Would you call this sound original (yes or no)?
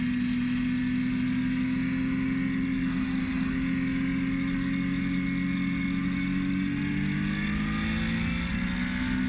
yes